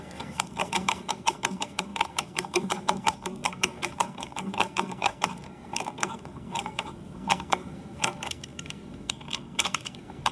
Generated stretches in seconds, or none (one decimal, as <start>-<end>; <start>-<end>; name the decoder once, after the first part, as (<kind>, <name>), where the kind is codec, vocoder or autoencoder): 0.0-10.3 (codec, SNAC)